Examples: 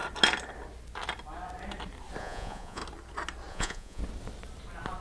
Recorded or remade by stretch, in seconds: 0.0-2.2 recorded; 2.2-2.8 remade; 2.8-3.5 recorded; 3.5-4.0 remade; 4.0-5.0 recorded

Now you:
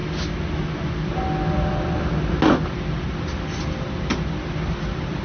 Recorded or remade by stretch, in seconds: 0.0-5.2 recorded

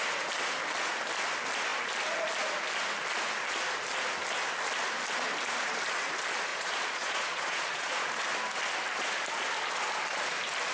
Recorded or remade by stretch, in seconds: 0.0-6.5 recorded; 6.5-8.1 remade; 8.1-10.7 recorded